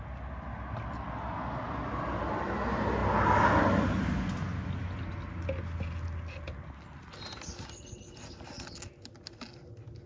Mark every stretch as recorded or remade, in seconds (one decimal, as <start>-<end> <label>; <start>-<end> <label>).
0.0-10.1 recorded